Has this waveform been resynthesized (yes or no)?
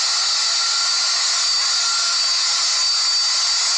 no